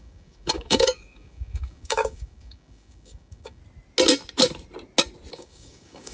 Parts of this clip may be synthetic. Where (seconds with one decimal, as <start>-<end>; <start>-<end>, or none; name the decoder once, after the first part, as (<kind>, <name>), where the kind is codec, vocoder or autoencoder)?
0.0-3.6 (codec, DAC); 5.3-6.1